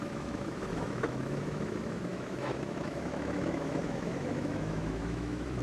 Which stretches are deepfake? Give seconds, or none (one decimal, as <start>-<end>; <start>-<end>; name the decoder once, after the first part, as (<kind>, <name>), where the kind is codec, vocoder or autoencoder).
0.0-5.6 (autoencoder, DAC-VAE)